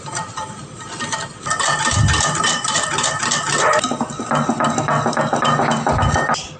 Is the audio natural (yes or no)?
yes